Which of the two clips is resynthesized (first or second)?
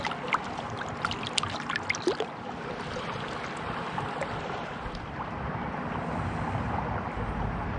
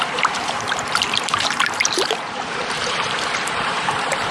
second